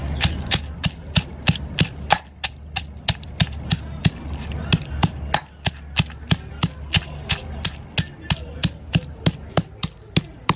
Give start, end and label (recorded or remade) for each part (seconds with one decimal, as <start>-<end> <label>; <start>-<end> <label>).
0.0-10.6 recorded